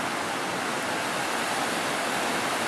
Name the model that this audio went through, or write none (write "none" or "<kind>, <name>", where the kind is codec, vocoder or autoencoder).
none